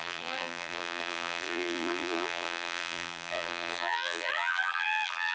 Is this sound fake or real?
fake